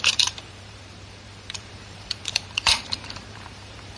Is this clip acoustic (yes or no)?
no